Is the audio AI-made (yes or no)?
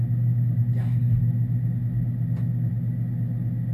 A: no